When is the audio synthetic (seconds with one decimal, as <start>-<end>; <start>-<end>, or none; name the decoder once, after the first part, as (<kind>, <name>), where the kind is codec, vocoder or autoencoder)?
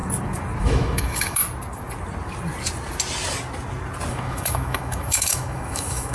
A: 0.6-1.4 (autoencoder, DAC-VAE); 4.1-6.1